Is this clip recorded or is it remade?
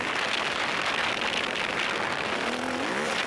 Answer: recorded